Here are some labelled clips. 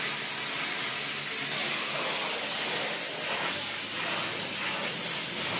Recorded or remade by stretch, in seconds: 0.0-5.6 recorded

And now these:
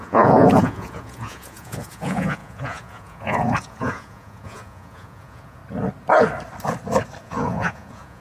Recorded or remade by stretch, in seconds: 0.0-5.6 remade; 5.6-7.2 recorded; 7.2-8.2 remade